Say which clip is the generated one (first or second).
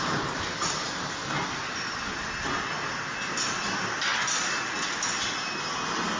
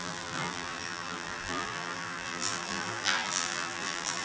second